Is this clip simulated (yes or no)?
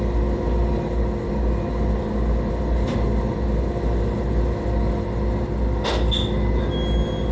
no